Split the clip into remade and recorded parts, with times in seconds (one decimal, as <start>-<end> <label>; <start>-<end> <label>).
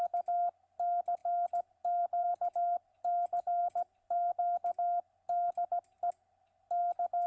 0.0-1.2 recorded; 1.2-4.4 remade; 4.4-7.3 recorded